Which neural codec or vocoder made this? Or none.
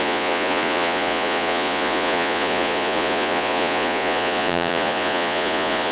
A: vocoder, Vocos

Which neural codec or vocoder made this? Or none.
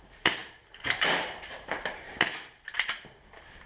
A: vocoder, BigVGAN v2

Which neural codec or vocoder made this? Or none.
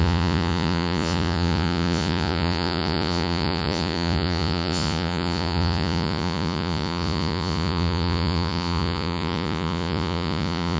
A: vocoder, Vocos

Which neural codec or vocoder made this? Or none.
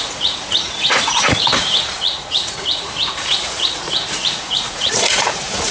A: vocoder, Vocos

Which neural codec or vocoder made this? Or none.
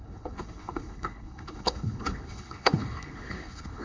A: codec, HILCodec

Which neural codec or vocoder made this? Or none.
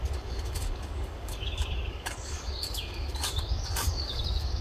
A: codec, DAC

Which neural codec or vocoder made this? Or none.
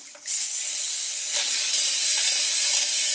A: none